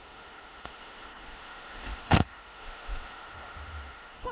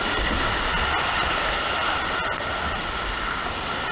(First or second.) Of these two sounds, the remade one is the first